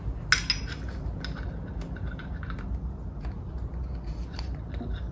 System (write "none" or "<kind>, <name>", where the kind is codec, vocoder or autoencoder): none